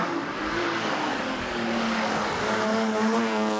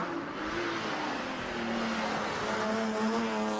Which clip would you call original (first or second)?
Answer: second